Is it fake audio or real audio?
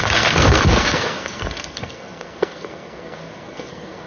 fake